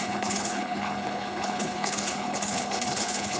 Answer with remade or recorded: remade